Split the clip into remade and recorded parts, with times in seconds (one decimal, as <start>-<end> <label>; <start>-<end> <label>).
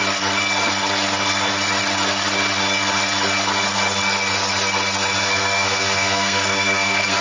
0.0-5.2 recorded; 5.2-7.2 remade